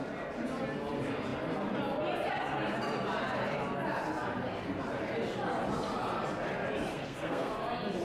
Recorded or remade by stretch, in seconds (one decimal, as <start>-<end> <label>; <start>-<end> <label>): 0.0-6.9 recorded; 6.9-7.5 remade; 7.5-8.0 recorded